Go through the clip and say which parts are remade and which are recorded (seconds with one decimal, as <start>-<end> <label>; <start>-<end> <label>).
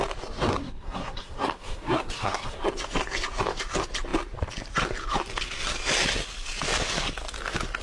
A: 0.0-0.5 recorded; 0.5-2.7 remade; 2.7-7.8 recorded